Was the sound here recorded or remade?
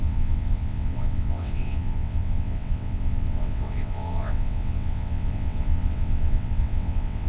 remade